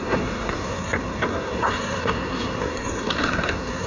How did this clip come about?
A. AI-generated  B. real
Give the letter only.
A